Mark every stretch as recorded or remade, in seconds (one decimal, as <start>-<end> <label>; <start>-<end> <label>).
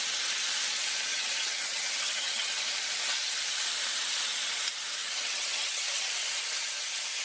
0.0-1.1 recorded; 1.1-2.5 remade; 2.5-5.0 recorded; 5.0-6.1 remade; 6.1-7.2 recorded